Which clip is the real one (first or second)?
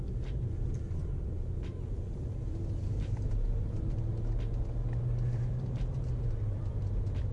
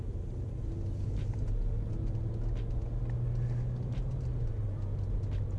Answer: second